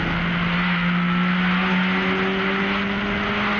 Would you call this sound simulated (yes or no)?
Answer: no